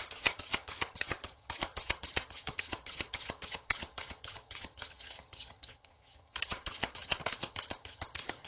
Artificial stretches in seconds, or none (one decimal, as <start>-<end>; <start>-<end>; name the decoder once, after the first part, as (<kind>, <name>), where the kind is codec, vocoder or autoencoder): 0.0-8.5 (vocoder, HiFi-GAN)